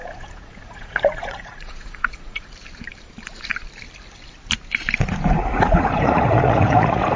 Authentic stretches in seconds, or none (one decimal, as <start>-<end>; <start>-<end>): 2.5-5.4